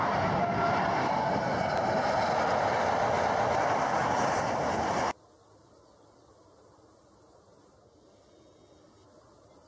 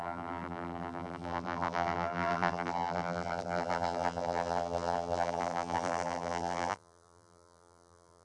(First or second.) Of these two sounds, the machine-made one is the second